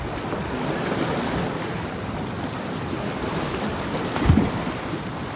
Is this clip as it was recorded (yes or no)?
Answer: yes